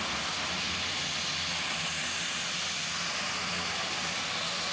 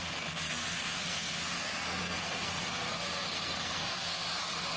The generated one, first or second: second